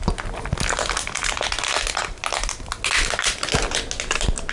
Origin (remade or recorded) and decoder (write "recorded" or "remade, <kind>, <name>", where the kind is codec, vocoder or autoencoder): recorded